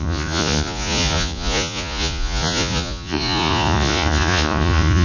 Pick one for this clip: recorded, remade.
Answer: remade